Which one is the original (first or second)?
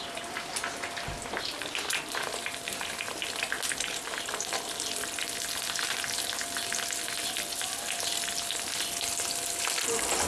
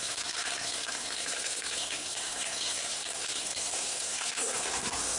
first